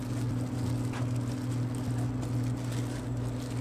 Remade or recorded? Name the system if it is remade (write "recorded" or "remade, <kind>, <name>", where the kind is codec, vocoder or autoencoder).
recorded